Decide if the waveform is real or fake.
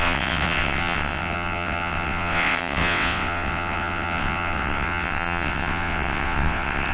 fake